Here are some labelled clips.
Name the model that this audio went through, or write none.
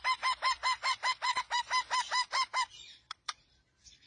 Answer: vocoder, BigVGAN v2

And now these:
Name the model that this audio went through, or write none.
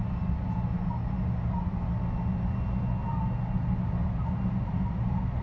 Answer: none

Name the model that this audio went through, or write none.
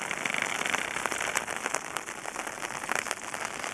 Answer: none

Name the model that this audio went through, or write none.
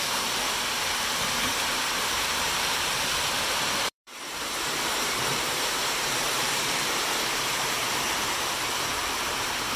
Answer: vocoder, BigVGAN v2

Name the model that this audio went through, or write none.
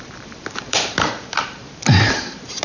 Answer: vocoder, BigVGAN v2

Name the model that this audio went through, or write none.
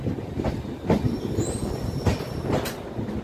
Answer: none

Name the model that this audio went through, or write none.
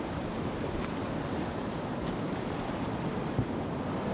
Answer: vocoder, BigVGAN v2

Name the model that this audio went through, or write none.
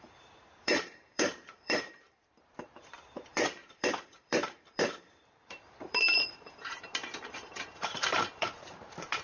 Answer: vocoder, BigVGAN v2